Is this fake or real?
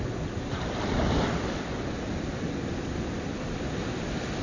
real